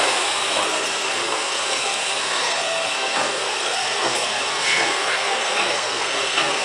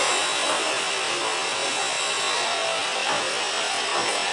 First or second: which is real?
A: second